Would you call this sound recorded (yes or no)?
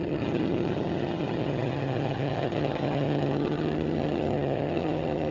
no